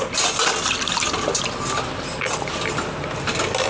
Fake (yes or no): no